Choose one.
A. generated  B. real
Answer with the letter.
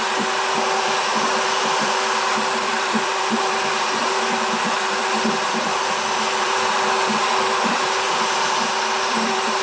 A